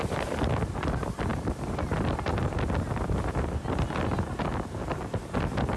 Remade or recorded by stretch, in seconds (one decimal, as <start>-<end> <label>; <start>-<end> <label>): 0.0-5.8 recorded